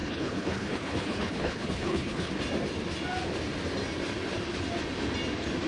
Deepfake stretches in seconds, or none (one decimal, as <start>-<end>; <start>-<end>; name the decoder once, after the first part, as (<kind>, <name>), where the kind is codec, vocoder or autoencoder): 0.0-2.3 (codec, HILCodec)